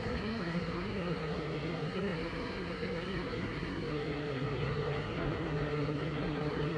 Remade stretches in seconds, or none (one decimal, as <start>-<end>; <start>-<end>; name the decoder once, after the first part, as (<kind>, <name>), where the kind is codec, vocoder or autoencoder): 0.0-6.8 (codec, SNAC)